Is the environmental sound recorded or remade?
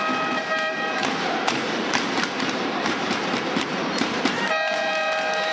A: remade